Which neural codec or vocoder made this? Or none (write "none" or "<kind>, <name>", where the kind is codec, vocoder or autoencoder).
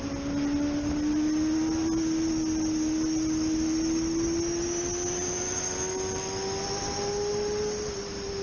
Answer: none